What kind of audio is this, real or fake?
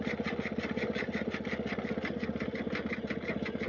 real